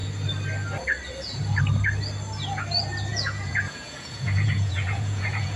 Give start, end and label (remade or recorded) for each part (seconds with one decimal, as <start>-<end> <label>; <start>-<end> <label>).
0.0-3.1 recorded; 3.1-5.6 remade